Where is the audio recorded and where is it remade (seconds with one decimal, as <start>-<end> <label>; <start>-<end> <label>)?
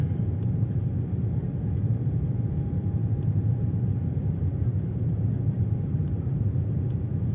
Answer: 0.0-3.0 recorded; 3.0-6.8 remade; 6.8-7.3 recorded